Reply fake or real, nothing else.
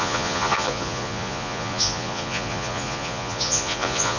fake